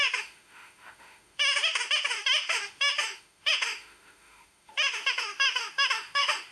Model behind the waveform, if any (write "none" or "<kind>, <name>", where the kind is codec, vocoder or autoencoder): autoencoder, DAC-VAE